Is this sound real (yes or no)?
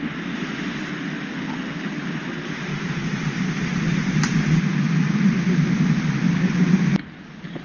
yes